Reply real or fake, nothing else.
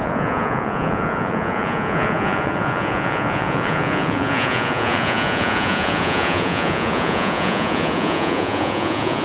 fake